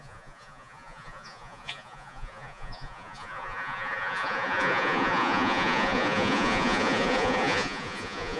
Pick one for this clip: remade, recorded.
remade